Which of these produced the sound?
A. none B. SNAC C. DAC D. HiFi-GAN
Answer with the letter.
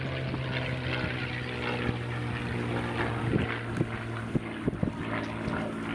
A